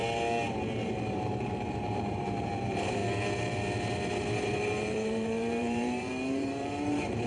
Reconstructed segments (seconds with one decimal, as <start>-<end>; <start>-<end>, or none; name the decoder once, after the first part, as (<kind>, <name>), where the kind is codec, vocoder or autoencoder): 0.8-3.0 (vocoder, BigVGAN v2); 4.3-7.3